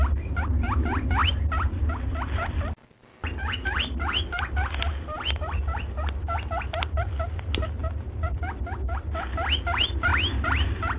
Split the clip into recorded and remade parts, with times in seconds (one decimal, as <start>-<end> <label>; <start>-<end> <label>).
0.0-1.2 recorded; 1.2-1.9 remade; 1.9-7.8 recorded; 7.8-8.3 remade; 8.3-10.1 recorded; 10.1-11.0 remade